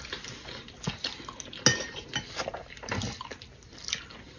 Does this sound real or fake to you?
real